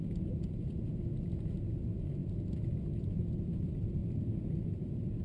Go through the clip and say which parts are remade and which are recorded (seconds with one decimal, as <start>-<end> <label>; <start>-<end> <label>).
0.0-5.2 recorded